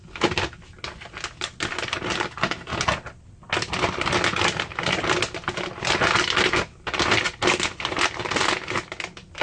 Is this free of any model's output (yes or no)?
yes